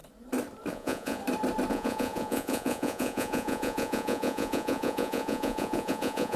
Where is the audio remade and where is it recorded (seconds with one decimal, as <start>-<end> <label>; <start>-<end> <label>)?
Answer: 0.0-0.7 recorded; 0.7-1.2 remade; 1.2-1.7 recorded; 1.7-6.4 remade

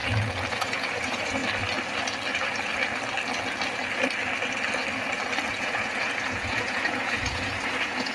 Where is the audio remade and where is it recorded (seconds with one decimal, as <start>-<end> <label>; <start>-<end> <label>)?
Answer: 0.0-0.5 recorded; 0.5-1.4 remade; 1.4-5.5 recorded; 5.5-8.1 remade

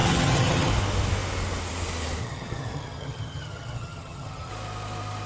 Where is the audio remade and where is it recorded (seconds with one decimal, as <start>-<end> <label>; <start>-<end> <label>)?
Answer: 0.0-0.7 remade; 0.7-2.2 recorded; 2.2-4.5 remade; 4.5-5.3 recorded

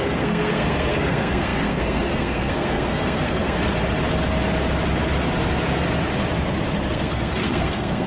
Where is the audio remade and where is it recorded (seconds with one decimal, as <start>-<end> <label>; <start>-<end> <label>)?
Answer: 0.0-3.6 remade; 3.6-6.9 recorded; 6.9-8.1 remade

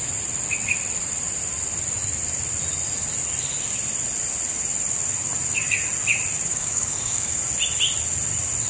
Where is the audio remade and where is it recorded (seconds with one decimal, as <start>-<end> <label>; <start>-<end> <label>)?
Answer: 0.0-6.5 recorded; 6.5-7.4 remade; 7.4-8.7 recorded

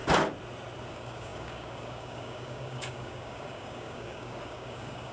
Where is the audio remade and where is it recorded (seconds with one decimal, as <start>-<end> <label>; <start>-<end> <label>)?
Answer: 0.0-0.9 recorded; 0.9-5.1 remade

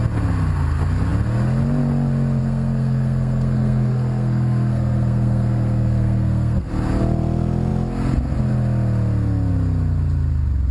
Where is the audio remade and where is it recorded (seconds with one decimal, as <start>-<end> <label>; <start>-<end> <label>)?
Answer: 0.0-2.4 recorded; 2.4-6.7 remade; 6.7-10.7 recorded

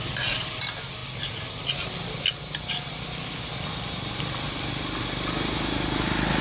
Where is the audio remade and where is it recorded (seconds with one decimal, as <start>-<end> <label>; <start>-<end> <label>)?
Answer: 0.0-6.4 recorded